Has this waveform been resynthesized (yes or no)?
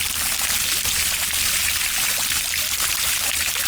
no